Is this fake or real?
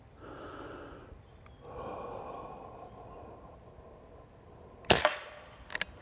real